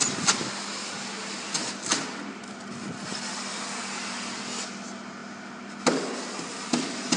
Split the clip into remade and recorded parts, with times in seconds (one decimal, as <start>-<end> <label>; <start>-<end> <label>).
0.0-7.2 recorded